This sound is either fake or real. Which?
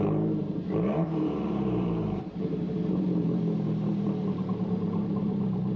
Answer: fake